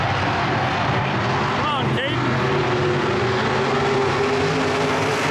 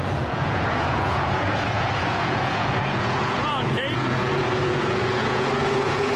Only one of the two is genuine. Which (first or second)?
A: first